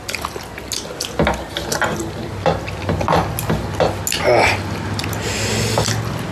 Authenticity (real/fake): real